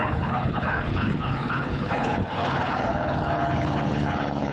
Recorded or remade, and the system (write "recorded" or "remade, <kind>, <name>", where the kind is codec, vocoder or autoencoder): remade, codec, HILCodec